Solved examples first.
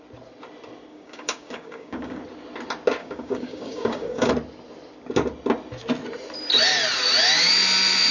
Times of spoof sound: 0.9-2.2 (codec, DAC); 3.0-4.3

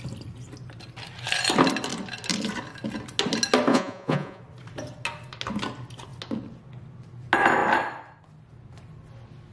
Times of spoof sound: 3.7-4.4 (vocoder, Vocos)

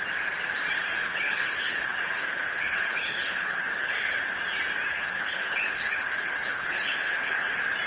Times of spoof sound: 1.0-4.2 (codec, HILCodec); 4.9-7.5

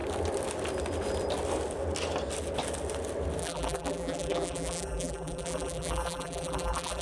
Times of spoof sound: 3.4-7.0 (vocoder, BigVGAN v2)

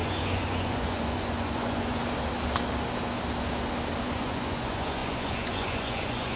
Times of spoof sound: 0.0-2.0 (vocoder, Vocos); 4.0-6.4